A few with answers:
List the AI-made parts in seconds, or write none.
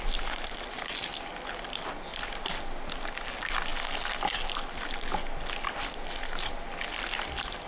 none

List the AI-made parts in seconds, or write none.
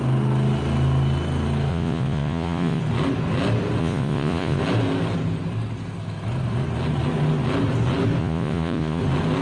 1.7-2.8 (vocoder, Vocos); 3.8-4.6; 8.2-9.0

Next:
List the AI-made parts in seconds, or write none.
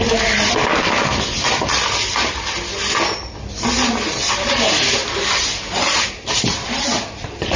none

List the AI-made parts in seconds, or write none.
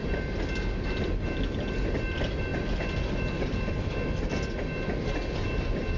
none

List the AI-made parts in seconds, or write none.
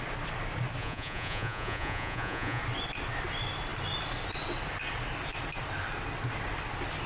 0.8-2.6 (vocoder, Vocos)